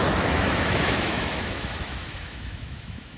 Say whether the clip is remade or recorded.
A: remade